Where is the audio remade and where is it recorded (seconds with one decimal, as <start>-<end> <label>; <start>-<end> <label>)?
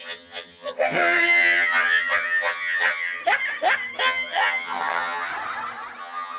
0.0-3.2 remade; 3.2-4.0 recorded; 4.0-5.3 remade; 5.3-6.0 recorded; 6.0-6.4 remade